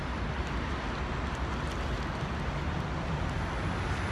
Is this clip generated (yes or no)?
no